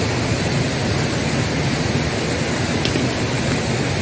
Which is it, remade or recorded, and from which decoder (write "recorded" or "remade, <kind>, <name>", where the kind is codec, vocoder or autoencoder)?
recorded